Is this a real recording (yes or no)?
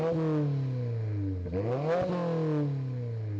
yes